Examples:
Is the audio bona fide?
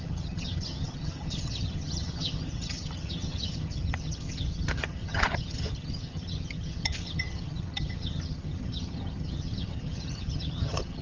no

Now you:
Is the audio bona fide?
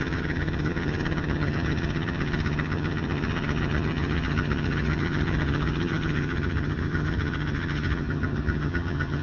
no